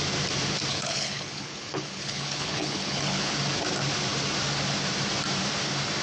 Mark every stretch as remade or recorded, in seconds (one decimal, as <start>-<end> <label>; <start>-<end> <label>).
0.0-0.7 recorded; 0.7-3.3 remade; 3.3-6.0 recorded